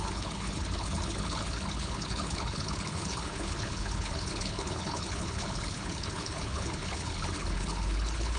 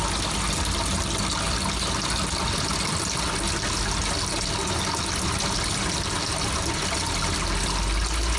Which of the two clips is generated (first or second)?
first